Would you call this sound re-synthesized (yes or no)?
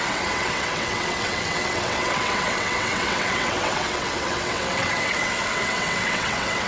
yes